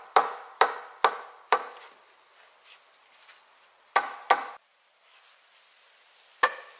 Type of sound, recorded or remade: recorded